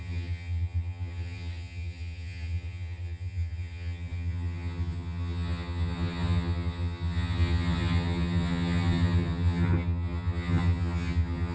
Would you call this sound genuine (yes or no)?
no